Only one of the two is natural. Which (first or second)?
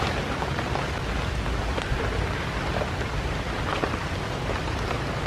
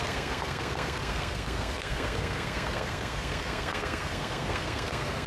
first